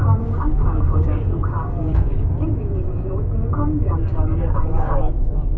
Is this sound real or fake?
fake